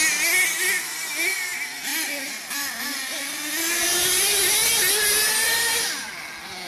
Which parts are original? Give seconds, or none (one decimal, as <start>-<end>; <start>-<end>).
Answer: 0.0-6.7